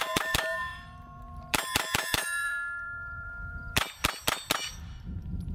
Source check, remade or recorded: remade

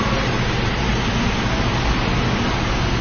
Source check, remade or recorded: recorded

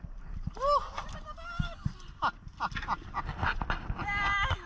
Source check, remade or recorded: recorded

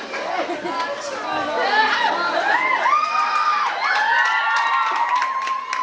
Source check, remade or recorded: recorded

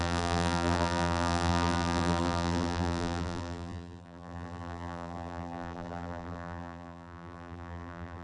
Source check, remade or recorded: remade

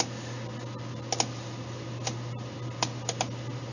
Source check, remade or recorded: recorded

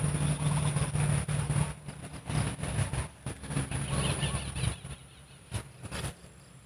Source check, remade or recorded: recorded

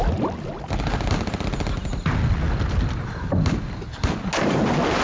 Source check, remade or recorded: recorded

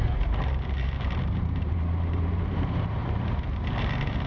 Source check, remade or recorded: remade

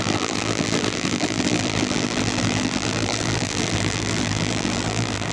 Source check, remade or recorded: remade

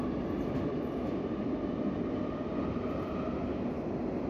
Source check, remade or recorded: recorded